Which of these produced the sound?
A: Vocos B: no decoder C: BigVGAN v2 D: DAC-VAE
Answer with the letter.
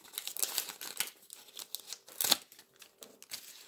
B